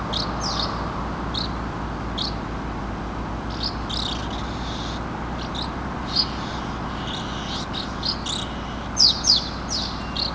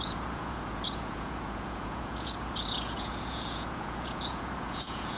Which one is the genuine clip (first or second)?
first